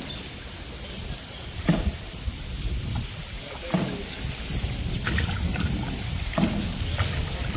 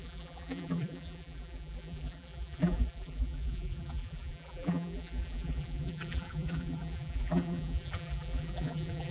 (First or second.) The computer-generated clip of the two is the second